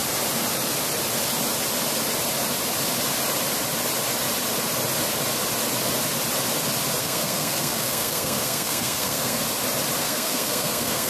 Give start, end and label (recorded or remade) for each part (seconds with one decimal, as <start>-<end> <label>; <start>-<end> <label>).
0.0-7.0 recorded; 7.0-9.4 remade; 9.4-10.0 recorded; 10.0-11.1 remade